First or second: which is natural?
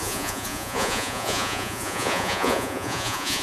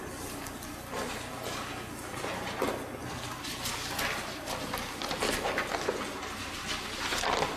second